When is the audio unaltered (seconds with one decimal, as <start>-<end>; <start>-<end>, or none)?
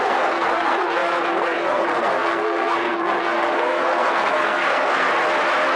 5.1-5.8